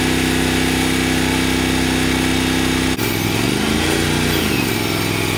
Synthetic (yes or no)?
no